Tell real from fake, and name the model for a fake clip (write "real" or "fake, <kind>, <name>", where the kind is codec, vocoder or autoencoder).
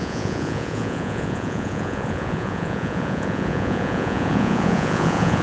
fake, vocoder, Vocos